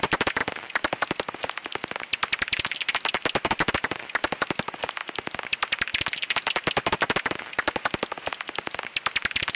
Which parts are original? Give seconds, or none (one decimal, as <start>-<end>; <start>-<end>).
5.0-5.5